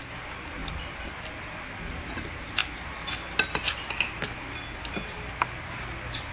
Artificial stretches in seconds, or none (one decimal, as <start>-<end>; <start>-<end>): none

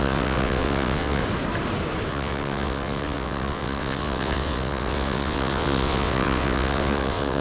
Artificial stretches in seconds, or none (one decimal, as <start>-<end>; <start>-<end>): 0.0-1.2; 2.1-7.4

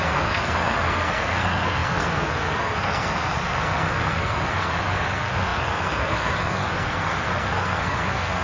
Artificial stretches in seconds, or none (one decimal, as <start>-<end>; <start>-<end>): 0.0-8.4

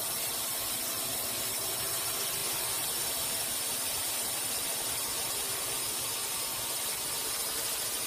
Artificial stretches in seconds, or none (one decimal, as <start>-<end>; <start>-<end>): none

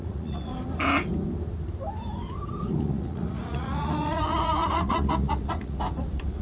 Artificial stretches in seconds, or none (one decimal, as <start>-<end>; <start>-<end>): 0.0-0.5; 2.6-6.4

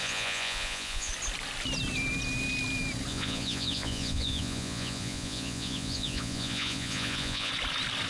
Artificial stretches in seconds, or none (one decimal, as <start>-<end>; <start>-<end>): 0.0-1.1; 3.1-7.5

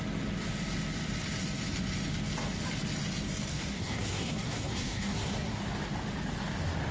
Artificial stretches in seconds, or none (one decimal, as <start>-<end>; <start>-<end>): 3.5-5.6

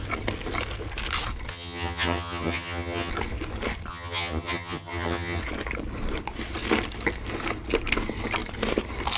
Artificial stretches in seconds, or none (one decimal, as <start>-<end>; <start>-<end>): 1.5-3.1; 3.9-5.4